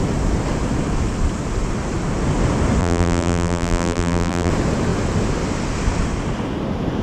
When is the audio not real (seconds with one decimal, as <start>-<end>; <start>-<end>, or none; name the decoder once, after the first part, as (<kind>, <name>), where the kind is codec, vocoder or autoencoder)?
2.8-4.5 (vocoder, BigVGAN v2)